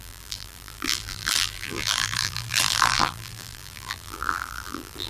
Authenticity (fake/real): fake